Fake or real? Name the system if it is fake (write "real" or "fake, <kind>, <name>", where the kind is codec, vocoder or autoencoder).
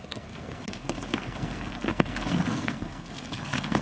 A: fake, codec, SNAC